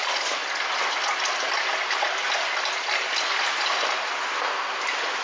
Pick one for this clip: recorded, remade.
recorded